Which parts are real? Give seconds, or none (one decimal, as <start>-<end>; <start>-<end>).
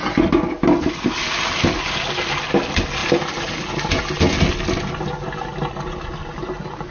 0.0-6.9